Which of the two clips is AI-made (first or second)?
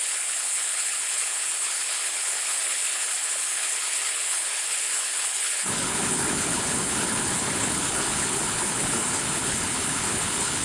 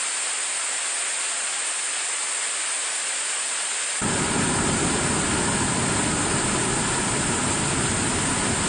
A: first